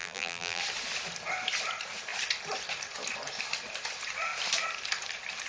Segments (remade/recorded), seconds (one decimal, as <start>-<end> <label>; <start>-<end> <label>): 0.0-0.6 remade; 0.6-5.5 recorded